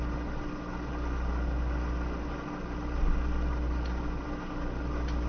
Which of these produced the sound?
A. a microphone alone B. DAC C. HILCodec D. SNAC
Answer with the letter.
A